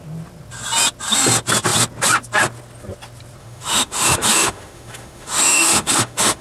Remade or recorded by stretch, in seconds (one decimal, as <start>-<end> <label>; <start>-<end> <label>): 0.0-3.4 recorded; 3.4-6.4 remade